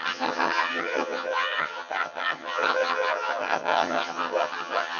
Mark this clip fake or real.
fake